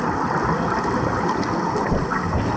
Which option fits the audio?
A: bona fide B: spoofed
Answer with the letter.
A